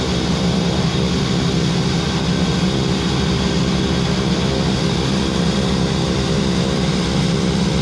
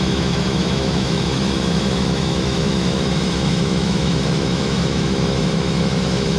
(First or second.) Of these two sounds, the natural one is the first